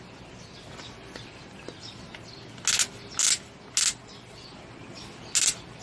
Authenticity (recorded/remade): recorded